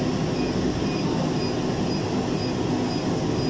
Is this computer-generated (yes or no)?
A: no